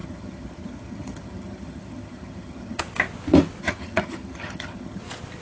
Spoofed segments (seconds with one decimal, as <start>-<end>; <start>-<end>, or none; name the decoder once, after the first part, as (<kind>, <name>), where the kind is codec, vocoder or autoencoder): 0.0-2.8 (vocoder, HiFi-GAN); 3.6-5.0